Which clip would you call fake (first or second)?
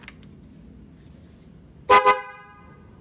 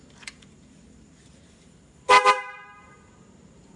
second